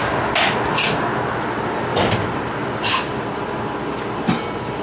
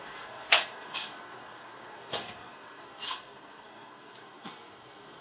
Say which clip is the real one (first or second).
first